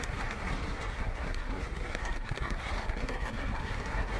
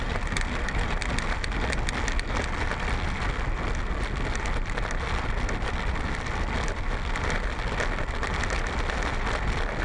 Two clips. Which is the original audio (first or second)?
second